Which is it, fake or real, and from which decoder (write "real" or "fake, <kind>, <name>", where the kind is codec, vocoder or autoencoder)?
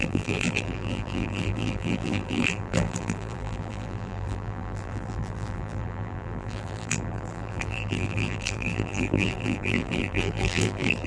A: fake, vocoder, BigVGAN v2